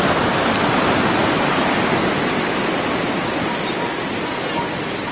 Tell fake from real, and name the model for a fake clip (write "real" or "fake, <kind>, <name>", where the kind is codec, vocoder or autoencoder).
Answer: real